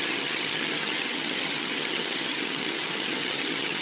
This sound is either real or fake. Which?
fake